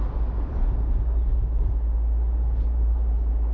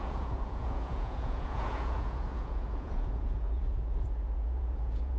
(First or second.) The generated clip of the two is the second